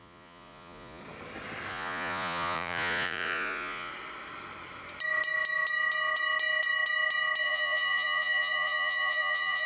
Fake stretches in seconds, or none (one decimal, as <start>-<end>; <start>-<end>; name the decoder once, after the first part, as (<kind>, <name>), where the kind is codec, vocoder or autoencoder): 0.0-1.0 (vocoder, Vocos); 1.7-3.9; 7.4-9.7